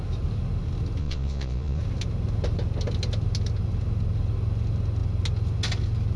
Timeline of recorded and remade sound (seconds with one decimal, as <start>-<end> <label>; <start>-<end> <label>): 0.0-1.0 recorded; 1.0-1.8 remade; 1.8-6.2 recorded